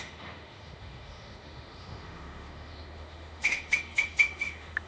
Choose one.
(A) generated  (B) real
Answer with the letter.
A